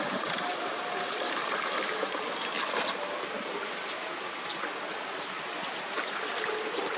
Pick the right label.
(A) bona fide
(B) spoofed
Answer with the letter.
A